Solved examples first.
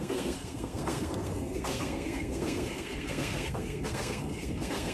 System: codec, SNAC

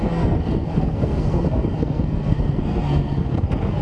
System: codec, SNAC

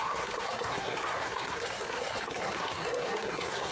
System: codec, SNAC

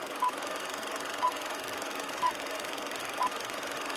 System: codec, SNAC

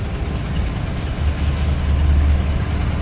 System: none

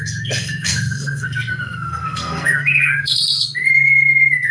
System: codec, SNAC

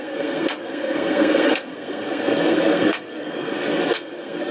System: codec, SNAC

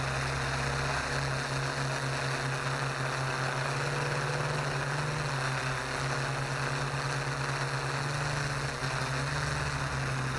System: none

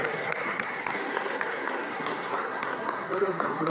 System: codec, SNAC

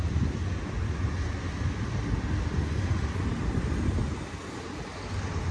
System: none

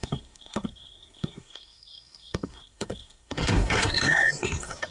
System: codec, SNAC